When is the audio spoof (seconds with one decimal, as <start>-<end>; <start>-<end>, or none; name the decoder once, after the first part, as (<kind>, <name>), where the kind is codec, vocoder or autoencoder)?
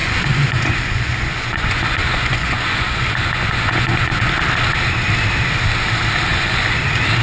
0.0-4.3 (vocoder, Vocos); 6.3-6.8